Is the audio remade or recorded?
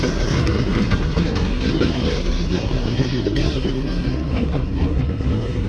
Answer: remade